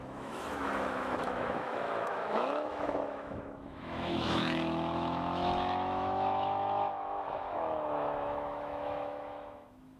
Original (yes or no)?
no